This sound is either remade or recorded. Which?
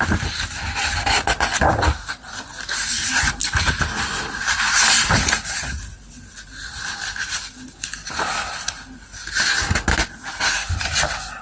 recorded